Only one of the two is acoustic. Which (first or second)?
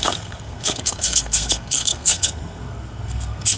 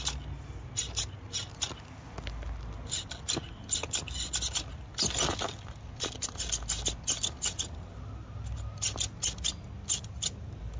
second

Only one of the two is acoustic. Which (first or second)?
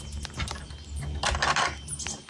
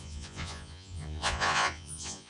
first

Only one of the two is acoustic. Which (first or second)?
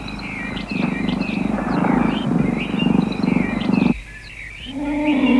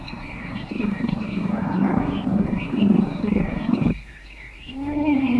first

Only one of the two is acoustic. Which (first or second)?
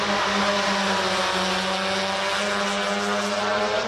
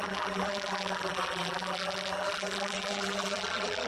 first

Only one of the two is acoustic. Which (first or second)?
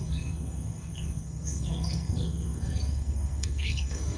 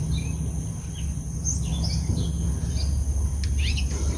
second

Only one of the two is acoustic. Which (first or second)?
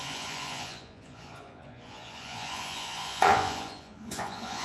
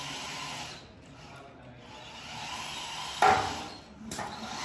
second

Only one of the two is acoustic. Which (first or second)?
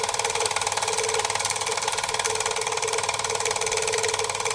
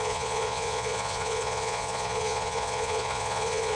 first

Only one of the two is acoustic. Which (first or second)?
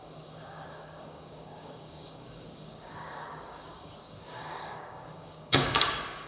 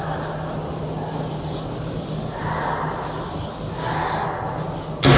second